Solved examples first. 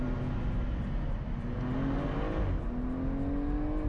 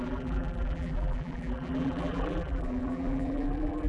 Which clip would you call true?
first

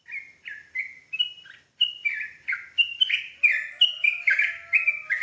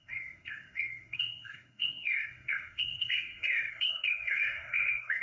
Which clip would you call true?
first